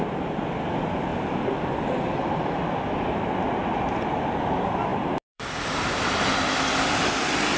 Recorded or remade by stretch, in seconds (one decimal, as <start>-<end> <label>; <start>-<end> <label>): 0.0-1.1 recorded; 1.1-2.4 remade; 2.4-4.9 recorded; 4.9-6.1 remade; 6.1-7.6 recorded